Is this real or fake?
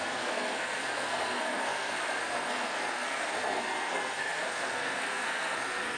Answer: fake